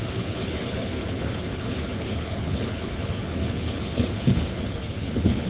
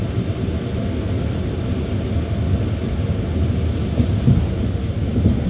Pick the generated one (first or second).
first